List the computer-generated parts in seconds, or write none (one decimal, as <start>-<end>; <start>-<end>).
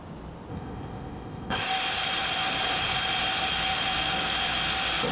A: 0.5-1.6